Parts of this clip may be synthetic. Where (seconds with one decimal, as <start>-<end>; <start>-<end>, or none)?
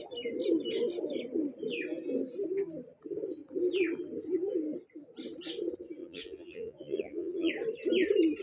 6.0-7.5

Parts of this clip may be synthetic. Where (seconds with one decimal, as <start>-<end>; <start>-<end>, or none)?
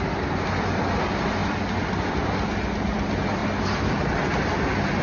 none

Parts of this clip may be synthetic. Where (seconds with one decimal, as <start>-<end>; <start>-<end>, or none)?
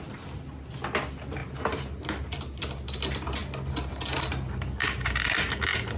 none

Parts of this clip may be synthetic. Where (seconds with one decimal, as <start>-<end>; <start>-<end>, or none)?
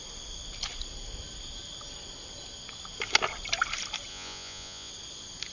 4.1-4.9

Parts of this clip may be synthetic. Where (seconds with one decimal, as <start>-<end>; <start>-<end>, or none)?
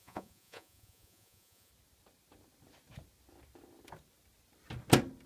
0.0-1.7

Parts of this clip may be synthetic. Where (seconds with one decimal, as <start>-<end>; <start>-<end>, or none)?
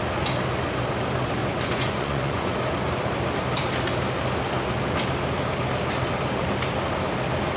1.4-2.5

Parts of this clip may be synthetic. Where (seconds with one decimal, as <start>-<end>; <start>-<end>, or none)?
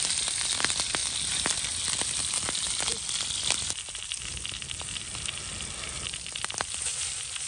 none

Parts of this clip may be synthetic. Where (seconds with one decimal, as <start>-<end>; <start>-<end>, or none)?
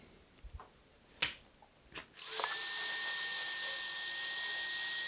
none